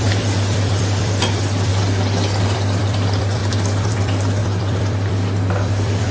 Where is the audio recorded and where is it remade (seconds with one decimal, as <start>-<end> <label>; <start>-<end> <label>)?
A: 0.0-1.7 remade; 1.7-2.4 recorded; 2.4-6.1 remade